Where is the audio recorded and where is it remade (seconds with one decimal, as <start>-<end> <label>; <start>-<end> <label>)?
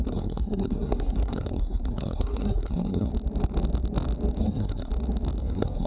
0.0-3.1 remade; 3.1-4.4 recorded; 4.4-4.9 remade; 4.9-5.4 recorded; 5.4-5.9 remade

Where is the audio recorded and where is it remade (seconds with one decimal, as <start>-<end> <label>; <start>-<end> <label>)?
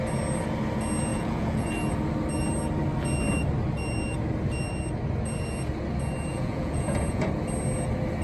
0.0-1.1 recorded; 1.1-1.7 remade; 1.7-6.3 recorded; 6.3-7.3 remade; 7.3-8.2 recorded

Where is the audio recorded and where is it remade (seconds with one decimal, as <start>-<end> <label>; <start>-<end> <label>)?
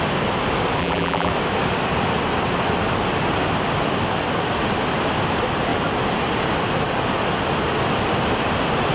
0.0-0.8 recorded; 0.8-1.3 remade; 1.3-8.9 recorded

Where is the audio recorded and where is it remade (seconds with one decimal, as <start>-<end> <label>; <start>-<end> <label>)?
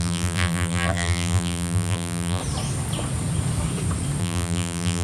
0.0-2.4 remade; 2.4-4.2 recorded; 4.2-5.0 remade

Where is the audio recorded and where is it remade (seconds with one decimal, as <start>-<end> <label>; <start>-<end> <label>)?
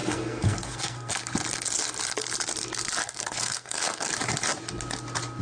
0.0-1.1 remade; 1.1-3.0 recorded; 3.0-4.1 remade; 4.1-5.4 recorded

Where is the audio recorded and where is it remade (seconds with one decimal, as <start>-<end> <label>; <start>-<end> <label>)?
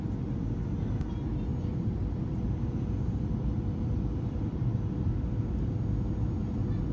0.0-1.5 recorded; 1.5-4.4 remade; 4.4-6.9 recorded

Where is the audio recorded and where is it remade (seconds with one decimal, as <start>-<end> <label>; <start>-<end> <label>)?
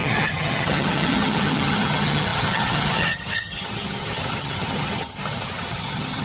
0.0-6.2 remade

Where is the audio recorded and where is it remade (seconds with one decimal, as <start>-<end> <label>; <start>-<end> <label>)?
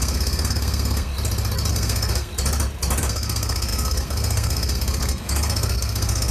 0.0-1.1 remade; 1.1-1.7 recorded; 1.7-2.3 remade; 2.3-3.0 recorded; 3.0-6.3 remade